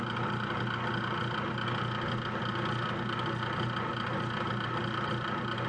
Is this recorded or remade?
recorded